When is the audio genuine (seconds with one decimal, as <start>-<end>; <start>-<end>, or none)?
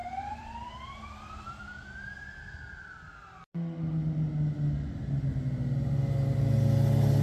0.9-7.2